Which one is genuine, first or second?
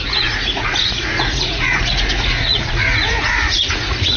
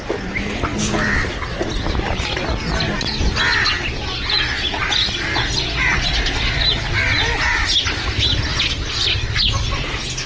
second